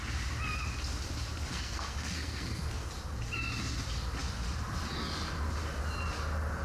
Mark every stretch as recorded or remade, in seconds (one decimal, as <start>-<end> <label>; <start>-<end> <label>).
0.0-1.5 recorded; 1.5-2.9 remade; 2.9-6.6 recorded